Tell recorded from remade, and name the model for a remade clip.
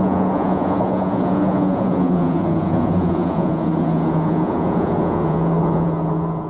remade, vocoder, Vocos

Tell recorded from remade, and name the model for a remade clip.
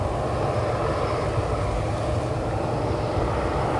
recorded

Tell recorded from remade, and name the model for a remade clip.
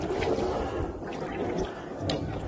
recorded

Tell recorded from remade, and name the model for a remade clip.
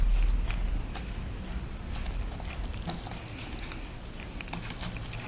recorded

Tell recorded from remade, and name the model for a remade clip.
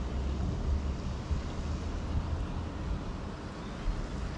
recorded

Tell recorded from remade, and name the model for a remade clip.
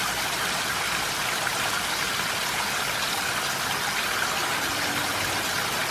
recorded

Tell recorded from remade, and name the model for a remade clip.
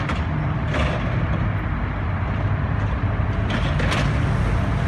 recorded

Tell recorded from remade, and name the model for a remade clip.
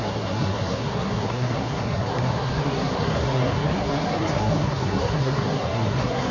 remade, codec, SNAC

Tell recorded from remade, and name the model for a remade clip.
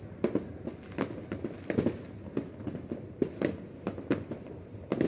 recorded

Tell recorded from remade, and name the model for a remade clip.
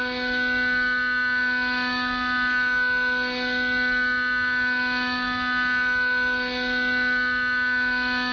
recorded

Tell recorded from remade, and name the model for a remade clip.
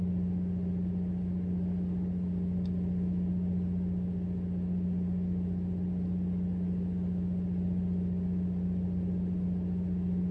recorded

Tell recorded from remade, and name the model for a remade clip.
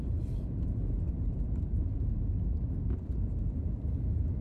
remade, vocoder, BigVGAN v2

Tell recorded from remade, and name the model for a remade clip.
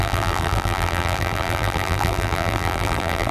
remade, vocoder, BigVGAN v2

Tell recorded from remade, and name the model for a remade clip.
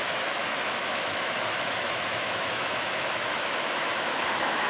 remade, autoencoder, DAC-VAE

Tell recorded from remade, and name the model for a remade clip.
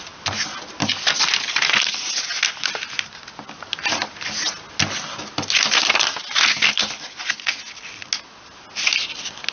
recorded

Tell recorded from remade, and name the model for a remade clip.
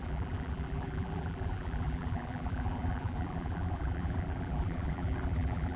remade, vocoder, BigVGAN v2